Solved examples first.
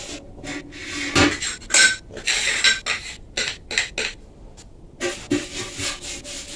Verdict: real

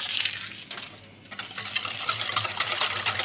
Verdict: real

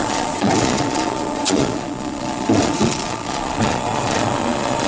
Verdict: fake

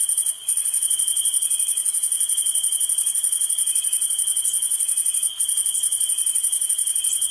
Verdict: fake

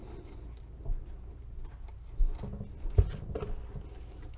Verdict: real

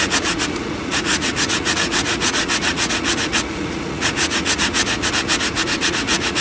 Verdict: fake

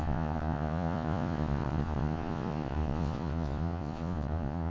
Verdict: fake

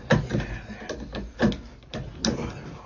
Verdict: real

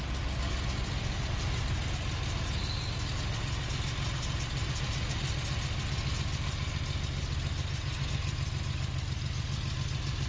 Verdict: real